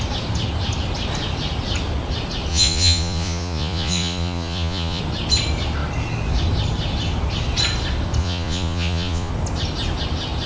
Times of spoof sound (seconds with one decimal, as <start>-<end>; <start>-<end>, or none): 2.5-5.0; 8.2-9.3